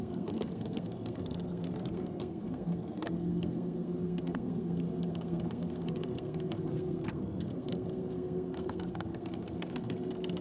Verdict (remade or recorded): remade